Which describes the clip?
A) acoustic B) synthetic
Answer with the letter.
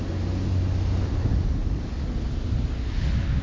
A